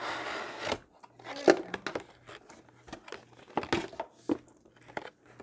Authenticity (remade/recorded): recorded